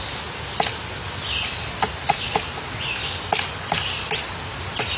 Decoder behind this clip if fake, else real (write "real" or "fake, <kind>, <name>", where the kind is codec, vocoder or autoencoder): real